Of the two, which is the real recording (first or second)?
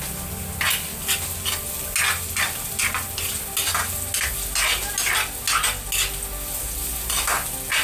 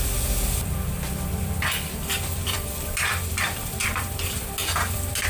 first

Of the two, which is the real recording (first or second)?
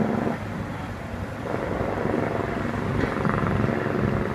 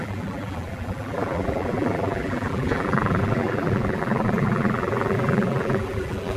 first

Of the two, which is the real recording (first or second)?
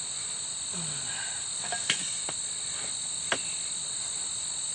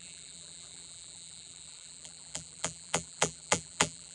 first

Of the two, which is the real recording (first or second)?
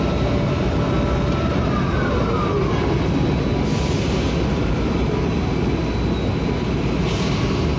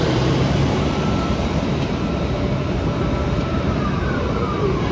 first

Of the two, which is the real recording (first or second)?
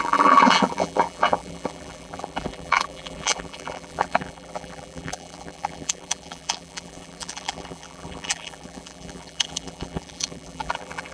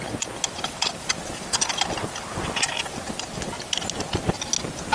second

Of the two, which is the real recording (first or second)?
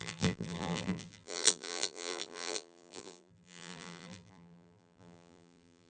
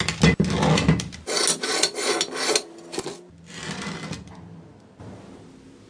second